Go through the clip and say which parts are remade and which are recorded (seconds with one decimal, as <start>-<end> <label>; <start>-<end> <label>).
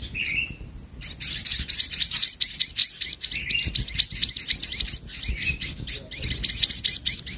0.0-7.4 recorded